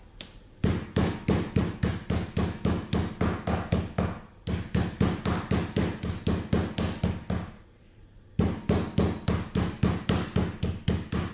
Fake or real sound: real